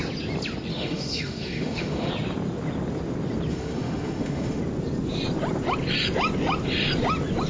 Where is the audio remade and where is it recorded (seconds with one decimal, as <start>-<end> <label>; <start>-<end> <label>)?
0.0-0.7 recorded; 0.7-2.1 remade; 2.1-3.5 recorded; 3.5-4.6 remade; 4.6-7.5 recorded